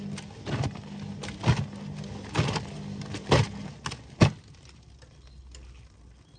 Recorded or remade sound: recorded